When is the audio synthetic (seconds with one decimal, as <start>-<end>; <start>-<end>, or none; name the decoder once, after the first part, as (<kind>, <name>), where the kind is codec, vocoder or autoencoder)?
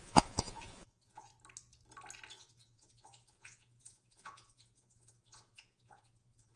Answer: 0.0-1.3 (vocoder, Vocos); 2.3-6.6